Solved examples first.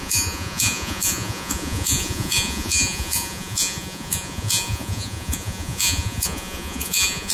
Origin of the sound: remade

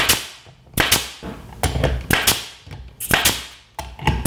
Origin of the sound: recorded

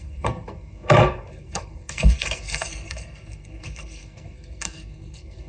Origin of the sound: remade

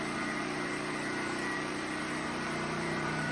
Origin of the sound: remade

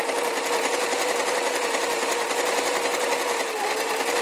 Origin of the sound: recorded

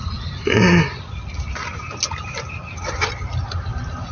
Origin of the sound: recorded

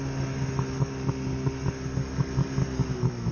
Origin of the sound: recorded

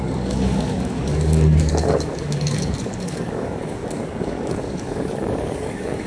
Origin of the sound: remade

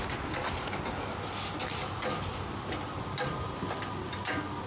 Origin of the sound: recorded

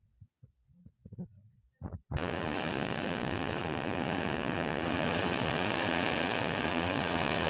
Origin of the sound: remade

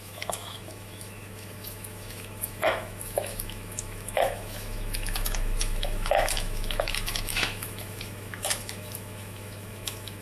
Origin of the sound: remade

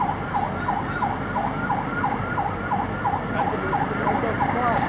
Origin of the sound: recorded